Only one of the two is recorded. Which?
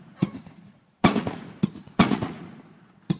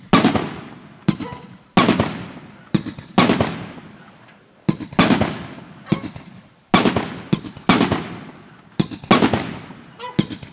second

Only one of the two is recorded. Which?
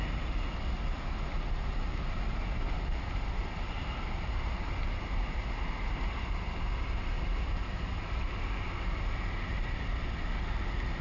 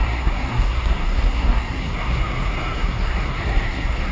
first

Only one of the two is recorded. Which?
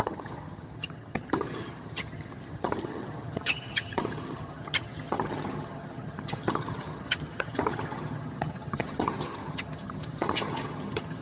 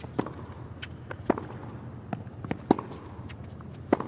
second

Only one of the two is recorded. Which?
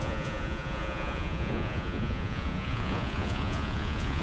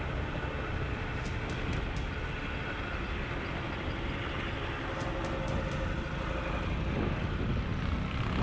second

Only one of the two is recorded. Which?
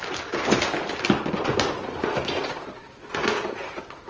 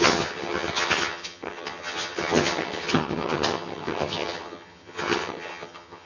first